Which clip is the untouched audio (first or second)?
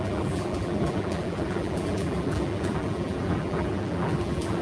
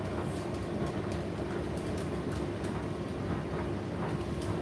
second